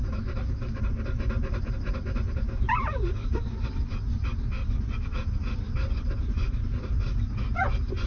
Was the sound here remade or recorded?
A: recorded